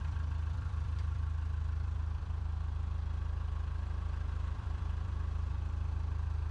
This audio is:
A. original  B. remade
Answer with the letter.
B